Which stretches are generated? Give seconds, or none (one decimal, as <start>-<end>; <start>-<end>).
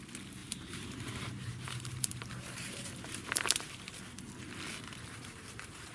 0.4-3.9; 4.7-5.9